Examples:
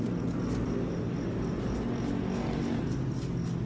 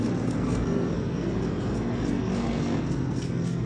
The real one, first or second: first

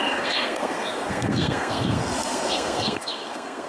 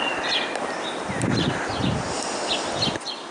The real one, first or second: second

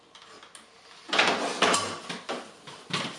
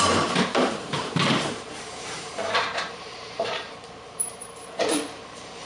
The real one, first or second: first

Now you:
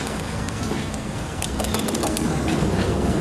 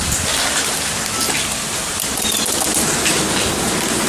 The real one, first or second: second